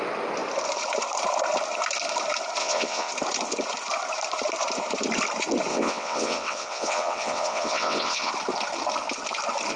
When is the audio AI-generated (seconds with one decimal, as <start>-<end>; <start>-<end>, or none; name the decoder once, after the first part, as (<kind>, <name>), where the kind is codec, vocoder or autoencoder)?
2.6-3.1 (vocoder, WaveNeXt); 5.7-8.3